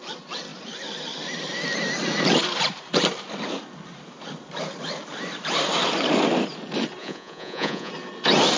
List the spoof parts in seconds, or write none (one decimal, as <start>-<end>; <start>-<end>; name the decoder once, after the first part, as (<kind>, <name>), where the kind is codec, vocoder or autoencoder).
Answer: 7.0-7.9 (vocoder, Vocos)